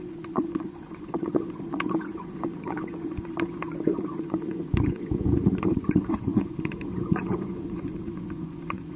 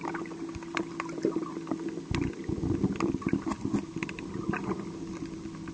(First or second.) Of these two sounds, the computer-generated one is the first